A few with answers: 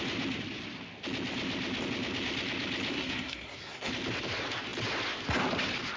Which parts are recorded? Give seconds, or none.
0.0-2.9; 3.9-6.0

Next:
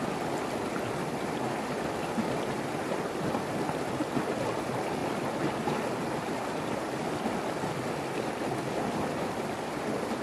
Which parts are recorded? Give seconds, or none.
0.0-10.2